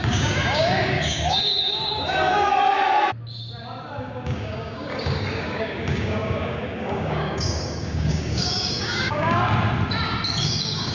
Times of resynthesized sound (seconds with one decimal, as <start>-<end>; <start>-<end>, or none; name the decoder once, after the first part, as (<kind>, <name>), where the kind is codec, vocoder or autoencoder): 0.0-2.5 (codec, DAC); 4.0-9.4; 10.4-10.9